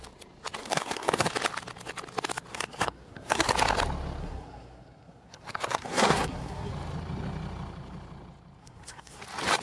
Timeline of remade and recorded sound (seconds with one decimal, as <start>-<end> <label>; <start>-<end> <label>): 0.0-0.6 recorded; 0.6-1.3 remade; 1.3-2.5 recorded; 2.5-3.5 remade; 3.5-4.2 recorded; 4.2-6.7 remade; 6.7-8.6 recorded; 8.6-9.2 remade; 9.2-9.6 recorded